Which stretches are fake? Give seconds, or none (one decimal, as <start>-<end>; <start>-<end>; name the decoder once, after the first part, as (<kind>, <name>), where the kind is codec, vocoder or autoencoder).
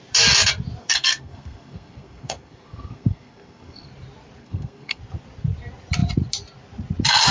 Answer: 0.8-3.9 (codec, SNAC); 4.4-5.0